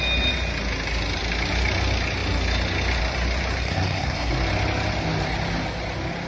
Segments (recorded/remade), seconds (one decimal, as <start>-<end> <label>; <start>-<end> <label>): 0.0-3.6 recorded; 3.6-4.3 remade; 4.3-6.3 recorded